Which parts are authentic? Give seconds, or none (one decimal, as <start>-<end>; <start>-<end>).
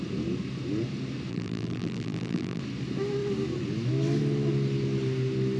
0.0-1.3; 2.6-5.6